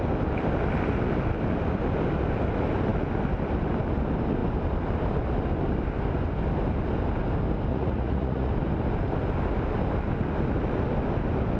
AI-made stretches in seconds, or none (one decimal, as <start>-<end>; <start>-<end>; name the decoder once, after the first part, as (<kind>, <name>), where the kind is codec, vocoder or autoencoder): 7.7-8.5 (vocoder, Vocos)